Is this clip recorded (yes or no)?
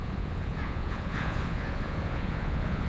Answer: no